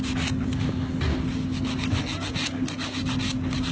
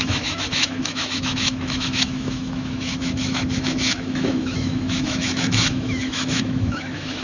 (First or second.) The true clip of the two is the first